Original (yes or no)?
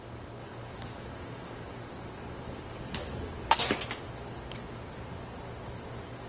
yes